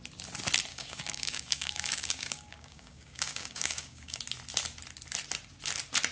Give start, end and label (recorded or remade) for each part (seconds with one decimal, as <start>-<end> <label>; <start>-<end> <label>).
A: 0.0-0.7 recorded; 0.7-4.2 remade; 4.2-6.1 recorded